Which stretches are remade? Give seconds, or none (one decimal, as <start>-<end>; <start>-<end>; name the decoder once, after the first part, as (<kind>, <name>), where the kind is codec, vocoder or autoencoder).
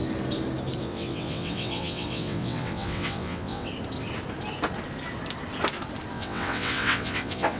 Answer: 0.8-3.7 (vocoder, WaveNeXt); 6.1-7.6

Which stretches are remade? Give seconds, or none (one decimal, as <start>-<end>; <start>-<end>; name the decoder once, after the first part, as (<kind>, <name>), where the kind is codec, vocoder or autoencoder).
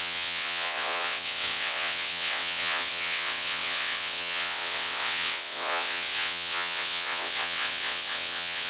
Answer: 0.0-8.7 (vocoder, WaveNeXt)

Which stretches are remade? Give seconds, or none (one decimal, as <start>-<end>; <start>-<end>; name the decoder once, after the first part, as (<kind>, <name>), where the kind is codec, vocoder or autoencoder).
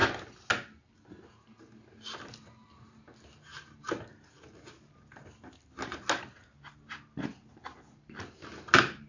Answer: none